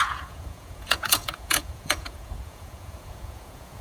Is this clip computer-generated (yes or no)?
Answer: yes